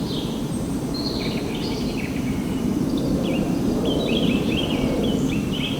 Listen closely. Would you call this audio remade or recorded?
remade